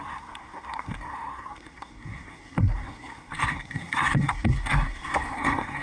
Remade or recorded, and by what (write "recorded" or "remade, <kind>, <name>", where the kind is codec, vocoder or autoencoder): remade, codec, SNAC